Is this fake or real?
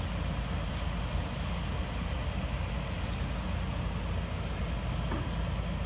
real